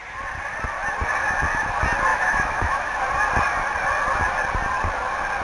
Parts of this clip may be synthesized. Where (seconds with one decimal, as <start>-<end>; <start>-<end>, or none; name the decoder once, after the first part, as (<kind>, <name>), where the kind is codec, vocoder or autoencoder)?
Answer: 2.1-3.0 (autoencoder, DAC-VAE)